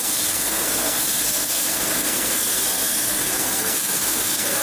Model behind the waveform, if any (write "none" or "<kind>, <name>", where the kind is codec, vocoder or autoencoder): codec, SNAC